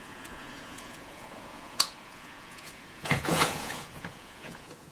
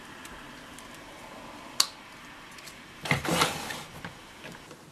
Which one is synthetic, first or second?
first